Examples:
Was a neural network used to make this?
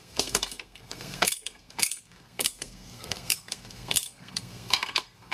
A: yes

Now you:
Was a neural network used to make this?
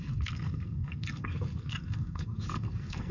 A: yes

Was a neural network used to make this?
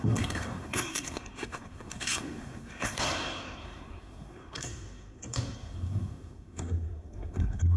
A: yes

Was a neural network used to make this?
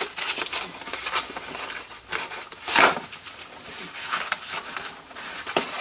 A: no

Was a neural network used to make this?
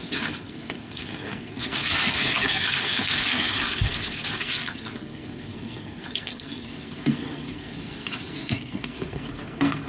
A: yes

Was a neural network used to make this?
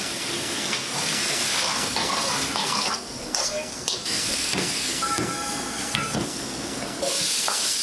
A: yes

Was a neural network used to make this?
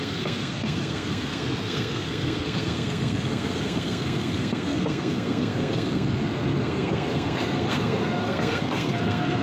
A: yes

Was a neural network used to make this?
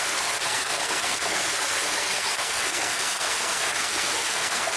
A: yes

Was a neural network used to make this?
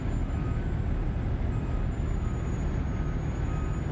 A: no